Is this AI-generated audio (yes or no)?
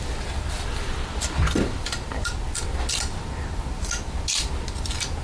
no